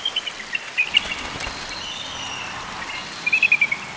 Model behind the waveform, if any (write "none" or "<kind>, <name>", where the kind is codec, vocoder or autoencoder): none